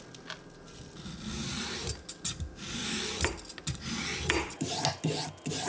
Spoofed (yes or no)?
no